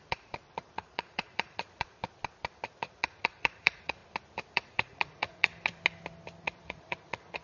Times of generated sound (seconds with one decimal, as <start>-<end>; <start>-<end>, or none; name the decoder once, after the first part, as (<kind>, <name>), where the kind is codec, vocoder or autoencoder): 0.0-2.0 (vocoder, Vocos); 2.7-4.0; 4.5-5.5; 6.4-7.4